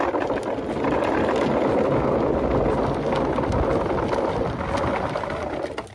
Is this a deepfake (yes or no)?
no